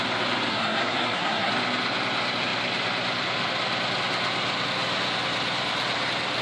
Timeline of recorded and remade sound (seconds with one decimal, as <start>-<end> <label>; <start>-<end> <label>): 0.0-0.5 recorded; 0.5-1.5 remade; 1.5-6.4 recorded